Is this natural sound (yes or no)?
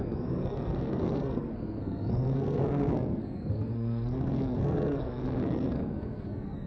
no